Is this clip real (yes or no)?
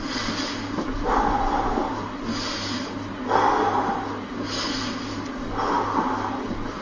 yes